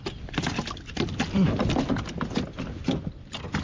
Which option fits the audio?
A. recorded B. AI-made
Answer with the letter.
A